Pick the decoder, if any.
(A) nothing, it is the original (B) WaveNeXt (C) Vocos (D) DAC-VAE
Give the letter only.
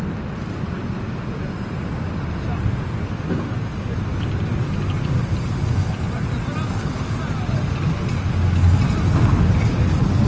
A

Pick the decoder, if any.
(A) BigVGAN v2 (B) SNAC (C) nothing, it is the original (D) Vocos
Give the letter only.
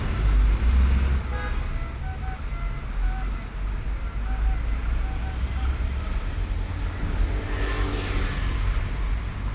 C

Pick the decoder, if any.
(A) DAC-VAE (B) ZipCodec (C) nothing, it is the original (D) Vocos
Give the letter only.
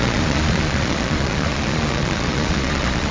D